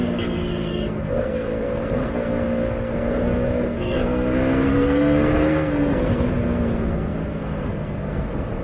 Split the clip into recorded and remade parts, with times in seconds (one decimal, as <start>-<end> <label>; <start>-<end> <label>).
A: 0.0-8.6 remade